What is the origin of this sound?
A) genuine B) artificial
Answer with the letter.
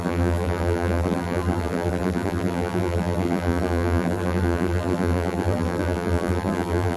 B